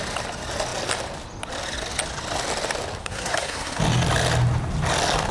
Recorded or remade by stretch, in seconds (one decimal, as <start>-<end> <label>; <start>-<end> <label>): 0.0-3.0 recorded; 3.0-3.8 remade; 3.8-5.3 recorded

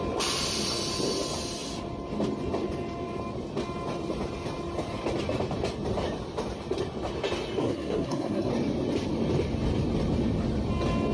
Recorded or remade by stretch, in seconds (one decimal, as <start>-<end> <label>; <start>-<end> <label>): 0.0-7.6 recorded; 7.6-8.5 remade; 8.5-11.1 recorded

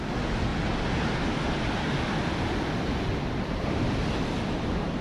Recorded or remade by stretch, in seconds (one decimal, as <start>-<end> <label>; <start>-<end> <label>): 0.0-5.0 recorded

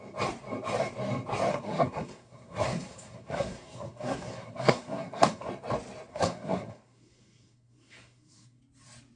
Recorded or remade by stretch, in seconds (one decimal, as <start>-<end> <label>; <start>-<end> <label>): 0.0-1.5 recorded; 1.5-5.5 remade; 5.5-6.1 recorded; 6.1-8.6 remade; 8.6-9.2 recorded